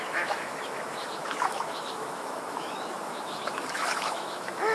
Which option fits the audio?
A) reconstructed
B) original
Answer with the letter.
A